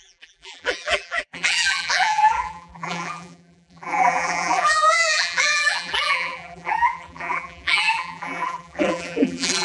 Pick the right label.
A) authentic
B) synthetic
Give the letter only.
B